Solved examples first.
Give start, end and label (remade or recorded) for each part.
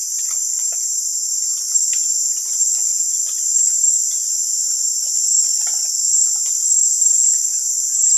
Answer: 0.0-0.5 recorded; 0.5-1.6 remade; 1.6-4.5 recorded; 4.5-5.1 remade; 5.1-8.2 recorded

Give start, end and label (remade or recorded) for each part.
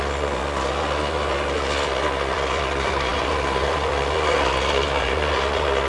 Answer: 0.0-5.9 remade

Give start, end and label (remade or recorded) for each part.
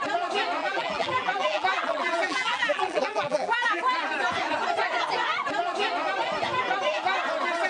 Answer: 0.0-0.6 recorded; 0.6-3.8 remade; 3.8-7.7 recorded